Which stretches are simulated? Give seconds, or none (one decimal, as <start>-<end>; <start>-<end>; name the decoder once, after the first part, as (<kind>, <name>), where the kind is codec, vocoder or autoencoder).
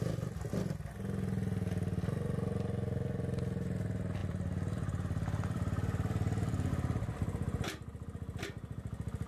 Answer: 4.2-6.7 (vocoder, BigVGAN v2)